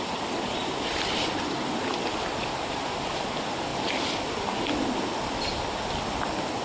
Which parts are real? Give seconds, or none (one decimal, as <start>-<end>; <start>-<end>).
0.0-0.6; 2.0-3.7